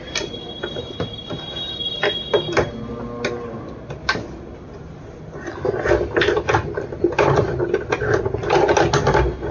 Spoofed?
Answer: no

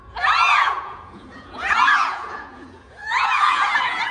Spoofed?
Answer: yes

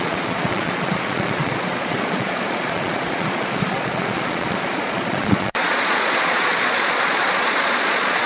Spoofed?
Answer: yes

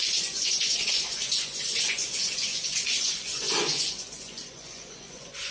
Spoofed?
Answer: yes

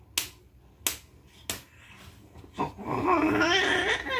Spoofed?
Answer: no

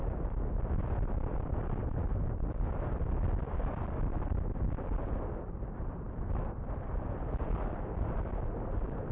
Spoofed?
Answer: no